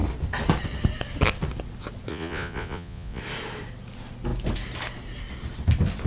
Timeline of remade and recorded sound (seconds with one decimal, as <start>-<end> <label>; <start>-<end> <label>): 0.0-2.1 recorded; 2.1-3.2 remade; 3.2-6.1 recorded